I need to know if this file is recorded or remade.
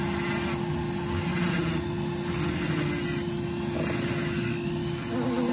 recorded